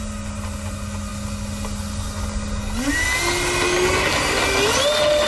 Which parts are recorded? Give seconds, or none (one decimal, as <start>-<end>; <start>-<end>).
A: 0.0-5.3